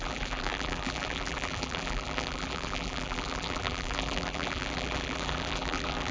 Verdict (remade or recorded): remade